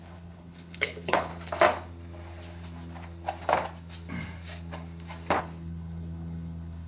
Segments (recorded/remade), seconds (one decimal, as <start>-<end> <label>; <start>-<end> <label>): 0.0-1.3 remade; 1.3-5.4 recorded; 5.4-6.9 remade